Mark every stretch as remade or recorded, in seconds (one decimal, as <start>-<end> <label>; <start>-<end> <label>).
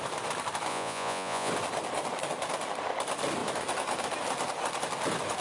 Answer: 0.0-0.7 recorded; 0.7-1.5 remade; 1.5-5.4 recorded